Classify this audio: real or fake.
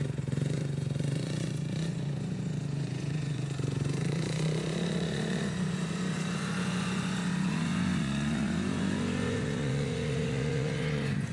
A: fake